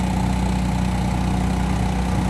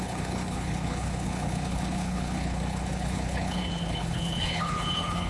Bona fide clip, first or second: first